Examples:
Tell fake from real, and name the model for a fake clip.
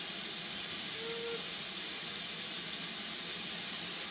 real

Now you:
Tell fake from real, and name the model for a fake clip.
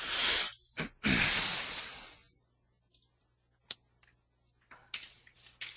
real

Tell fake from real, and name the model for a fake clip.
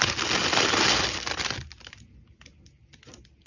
real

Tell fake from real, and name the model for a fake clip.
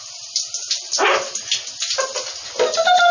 real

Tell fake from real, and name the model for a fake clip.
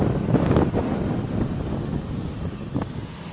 real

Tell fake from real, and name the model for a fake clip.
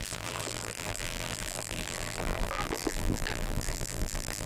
fake, vocoder, BigVGAN v2